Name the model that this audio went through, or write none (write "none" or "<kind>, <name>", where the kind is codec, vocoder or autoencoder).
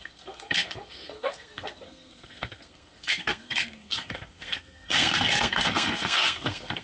codec, SNAC